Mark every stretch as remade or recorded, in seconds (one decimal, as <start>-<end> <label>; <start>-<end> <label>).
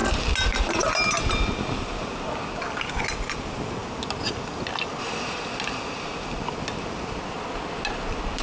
0.0-8.4 recorded